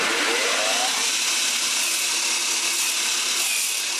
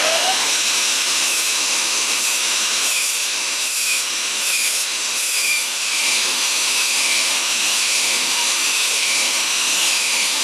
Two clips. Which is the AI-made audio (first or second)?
second